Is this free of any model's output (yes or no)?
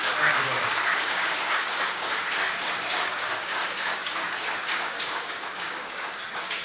no